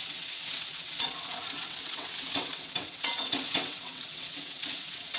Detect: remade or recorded remade